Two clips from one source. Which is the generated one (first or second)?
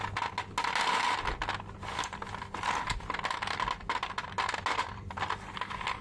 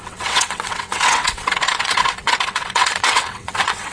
second